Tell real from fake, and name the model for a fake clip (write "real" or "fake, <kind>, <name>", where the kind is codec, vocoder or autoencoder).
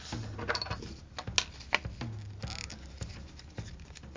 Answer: real